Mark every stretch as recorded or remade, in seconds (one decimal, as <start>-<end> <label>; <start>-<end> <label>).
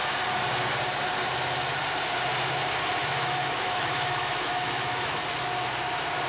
0.0-3.0 recorded; 3.0-5.2 remade; 5.2-6.3 recorded